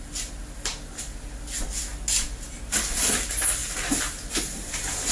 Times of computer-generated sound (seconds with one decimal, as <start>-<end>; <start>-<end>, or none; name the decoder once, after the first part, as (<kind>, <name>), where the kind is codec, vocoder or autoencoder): none